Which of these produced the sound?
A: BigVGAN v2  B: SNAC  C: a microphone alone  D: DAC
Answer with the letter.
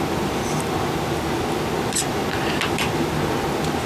C